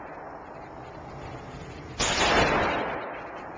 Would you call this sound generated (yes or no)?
no